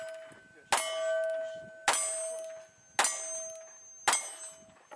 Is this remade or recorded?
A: recorded